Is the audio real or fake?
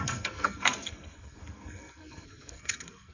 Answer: fake